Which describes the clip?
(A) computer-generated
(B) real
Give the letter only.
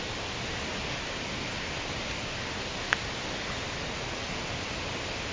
B